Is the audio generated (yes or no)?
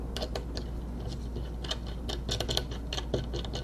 no